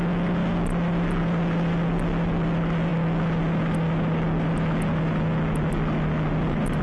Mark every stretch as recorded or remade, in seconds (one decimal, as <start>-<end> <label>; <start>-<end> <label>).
0.0-6.8 recorded